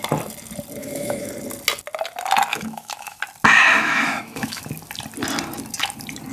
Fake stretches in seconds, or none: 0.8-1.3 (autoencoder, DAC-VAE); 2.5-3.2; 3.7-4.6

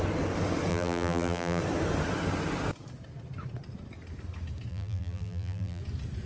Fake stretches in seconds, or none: 0.7-1.6 (vocoder, BigVGAN v2); 4.7-5.8

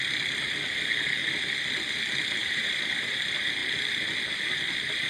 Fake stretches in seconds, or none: 2.4-3.2 (vocoder, BigVGAN v2)